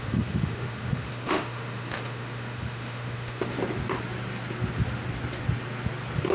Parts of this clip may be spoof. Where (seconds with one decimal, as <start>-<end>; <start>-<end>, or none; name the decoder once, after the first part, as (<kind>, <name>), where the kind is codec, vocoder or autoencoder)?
0.0-3.5 (autoencoder, DAC-VAE)